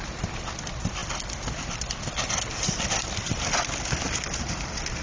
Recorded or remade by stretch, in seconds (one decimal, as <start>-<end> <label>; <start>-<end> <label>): 0.0-5.0 recorded